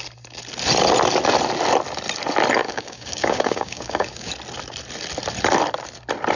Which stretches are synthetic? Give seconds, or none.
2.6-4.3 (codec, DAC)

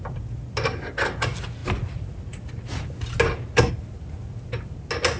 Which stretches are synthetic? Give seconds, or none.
none

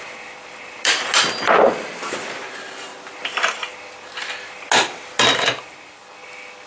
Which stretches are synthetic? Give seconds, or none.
none